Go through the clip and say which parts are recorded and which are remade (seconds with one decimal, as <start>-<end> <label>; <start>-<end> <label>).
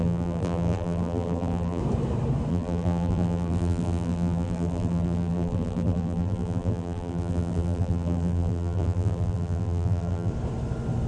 0.0-1.8 remade; 1.8-2.5 recorded; 2.5-10.3 remade; 10.3-11.1 recorded